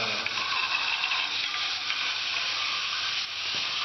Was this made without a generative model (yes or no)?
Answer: yes